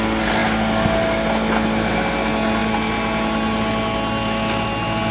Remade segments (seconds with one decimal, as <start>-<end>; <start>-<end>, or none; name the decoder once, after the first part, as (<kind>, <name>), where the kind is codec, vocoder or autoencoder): none